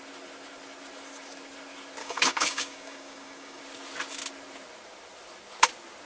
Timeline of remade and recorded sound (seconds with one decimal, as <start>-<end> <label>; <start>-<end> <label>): 0.0-2.0 recorded; 2.0-3.6 remade; 3.6-6.1 recorded